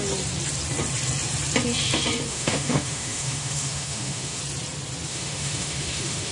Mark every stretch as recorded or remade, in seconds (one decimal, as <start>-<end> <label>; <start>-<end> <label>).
0.0-2.3 recorded; 2.3-4.4 remade; 4.4-5.1 recorded; 5.1-6.3 remade